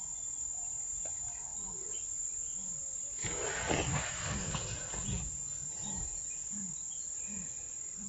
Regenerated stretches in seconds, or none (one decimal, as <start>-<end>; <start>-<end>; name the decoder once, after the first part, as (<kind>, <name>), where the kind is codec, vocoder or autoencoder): none